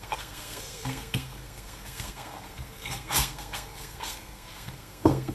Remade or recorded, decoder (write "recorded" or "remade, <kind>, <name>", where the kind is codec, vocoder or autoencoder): remade, codec, SNAC